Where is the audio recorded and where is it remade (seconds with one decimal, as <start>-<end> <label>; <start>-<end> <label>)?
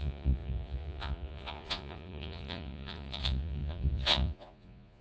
0.0-5.0 remade